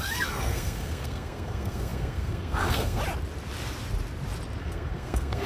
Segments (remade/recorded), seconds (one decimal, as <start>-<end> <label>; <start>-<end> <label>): 0.0-3.0 remade; 3.0-4.6 recorded; 4.6-5.5 remade